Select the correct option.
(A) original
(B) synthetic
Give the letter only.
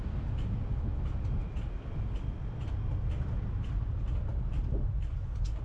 A